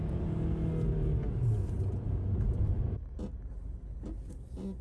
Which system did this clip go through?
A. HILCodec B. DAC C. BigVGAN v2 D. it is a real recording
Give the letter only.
D